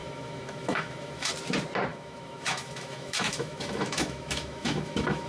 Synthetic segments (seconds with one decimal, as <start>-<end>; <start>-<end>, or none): 0.0-1.3; 1.9-5.3